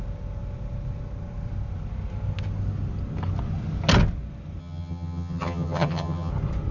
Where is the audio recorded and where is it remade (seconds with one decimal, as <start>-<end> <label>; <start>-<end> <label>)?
0.0-4.6 recorded; 4.6-6.3 remade; 6.3-6.7 recorded